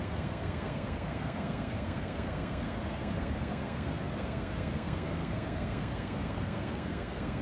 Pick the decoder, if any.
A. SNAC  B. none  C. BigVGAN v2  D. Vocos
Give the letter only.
A